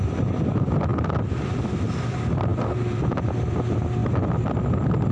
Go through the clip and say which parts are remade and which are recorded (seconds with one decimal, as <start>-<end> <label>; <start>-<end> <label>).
0.0-0.9 remade; 0.9-1.5 recorded; 1.5-4.0 remade; 4.0-5.1 recorded